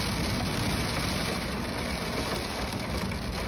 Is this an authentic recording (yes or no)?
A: yes